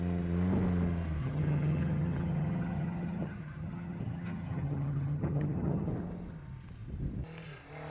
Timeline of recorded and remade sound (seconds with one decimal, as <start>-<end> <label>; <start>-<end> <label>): 0.0-1.2 recorded; 1.2-5.9 remade; 5.9-7.9 recorded